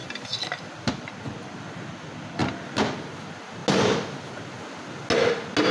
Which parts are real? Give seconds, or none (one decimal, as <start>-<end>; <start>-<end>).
0.0-5.7